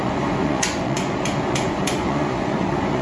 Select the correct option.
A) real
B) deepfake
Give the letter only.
B